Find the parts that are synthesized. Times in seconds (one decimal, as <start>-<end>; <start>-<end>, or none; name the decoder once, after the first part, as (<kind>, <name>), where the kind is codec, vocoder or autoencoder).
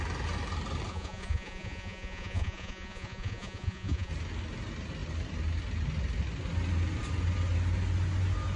0.9-4.1 (vocoder, Vocos)